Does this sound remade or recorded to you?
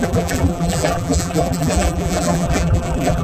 remade